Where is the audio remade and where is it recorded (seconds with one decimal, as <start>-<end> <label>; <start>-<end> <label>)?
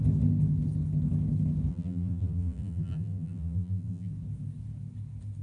0.0-1.7 recorded; 1.7-4.1 remade; 4.1-5.4 recorded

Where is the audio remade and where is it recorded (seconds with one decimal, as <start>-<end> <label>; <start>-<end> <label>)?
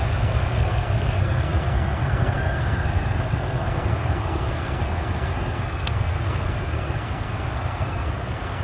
0.0-8.6 remade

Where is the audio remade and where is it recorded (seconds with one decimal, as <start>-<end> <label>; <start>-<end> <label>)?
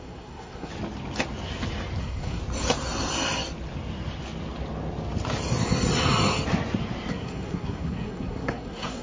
0.0-0.7 remade; 0.7-2.0 recorded; 2.0-2.4 remade; 2.4-7.1 recorded; 7.1-9.0 remade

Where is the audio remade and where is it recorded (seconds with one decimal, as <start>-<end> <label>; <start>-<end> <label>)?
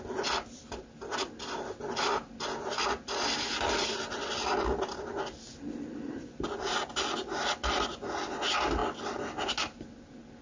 0.0-10.4 recorded